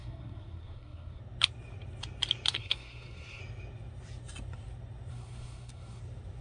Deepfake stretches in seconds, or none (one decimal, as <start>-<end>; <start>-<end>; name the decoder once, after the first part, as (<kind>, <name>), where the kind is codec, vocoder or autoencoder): 0.0-1.2 (codec, SNAC); 2.5-3.4; 5.1-6.0